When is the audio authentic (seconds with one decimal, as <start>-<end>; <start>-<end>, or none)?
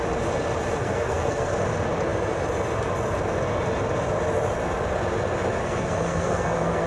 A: 0.0-0.8; 1.5-5.6